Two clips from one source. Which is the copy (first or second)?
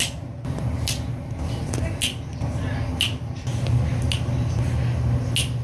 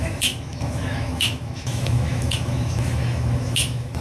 second